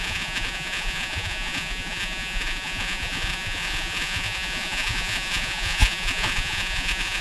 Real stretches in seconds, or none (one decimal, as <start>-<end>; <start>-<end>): none